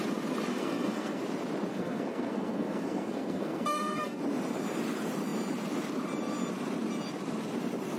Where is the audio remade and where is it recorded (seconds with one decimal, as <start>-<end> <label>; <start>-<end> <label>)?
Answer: 0.0-0.5 recorded; 0.5-1.2 remade; 1.2-1.7 recorded; 1.7-4.2 remade; 4.2-8.0 recorded